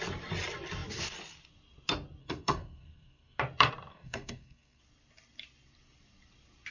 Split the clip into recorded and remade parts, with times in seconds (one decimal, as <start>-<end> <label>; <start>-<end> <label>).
0.0-2.2 recorded; 2.2-3.4 remade; 3.4-3.9 recorded; 3.9-4.8 remade; 4.8-6.7 recorded